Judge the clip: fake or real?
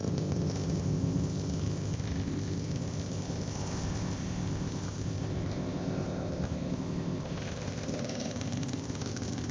fake